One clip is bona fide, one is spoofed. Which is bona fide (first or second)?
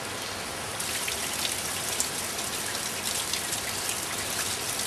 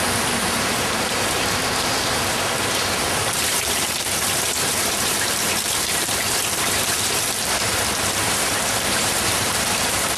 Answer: first